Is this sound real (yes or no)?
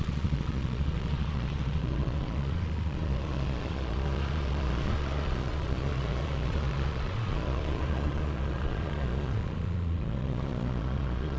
no